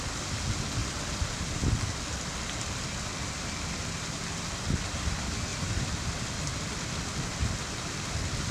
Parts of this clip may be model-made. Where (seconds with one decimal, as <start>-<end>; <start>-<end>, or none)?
none

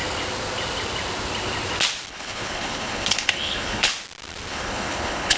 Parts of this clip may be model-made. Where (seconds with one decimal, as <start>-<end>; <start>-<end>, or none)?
2.1-3.9; 4.5-5.4

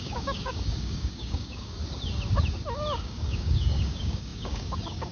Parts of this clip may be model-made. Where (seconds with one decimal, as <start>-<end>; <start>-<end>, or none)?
0.0-1.8; 3.0-5.1